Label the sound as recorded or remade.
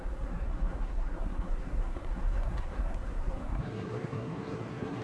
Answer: remade